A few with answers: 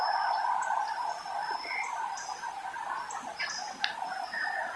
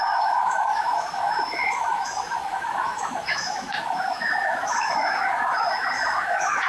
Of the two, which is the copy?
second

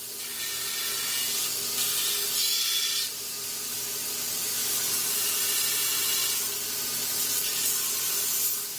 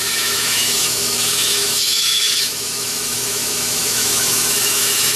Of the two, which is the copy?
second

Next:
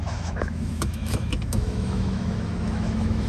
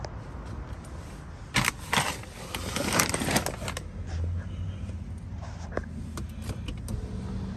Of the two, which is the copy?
first